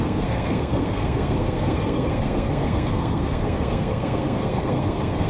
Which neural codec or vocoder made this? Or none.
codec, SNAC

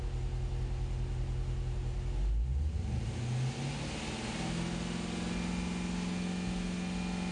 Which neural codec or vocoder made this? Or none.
none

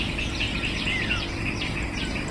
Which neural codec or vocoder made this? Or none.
none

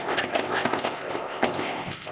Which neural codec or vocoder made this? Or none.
codec, ZipCodec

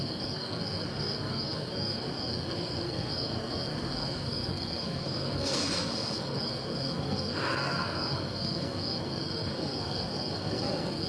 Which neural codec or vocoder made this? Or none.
codec, SNAC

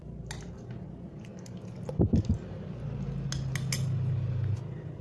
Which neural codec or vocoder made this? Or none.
none